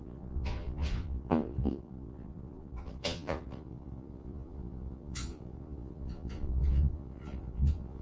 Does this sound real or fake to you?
fake